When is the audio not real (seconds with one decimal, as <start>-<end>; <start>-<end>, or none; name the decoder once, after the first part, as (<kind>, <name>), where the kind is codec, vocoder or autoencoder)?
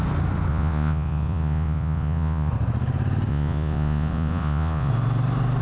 0.5-2.5 (vocoder, Vocos); 3.3-4.9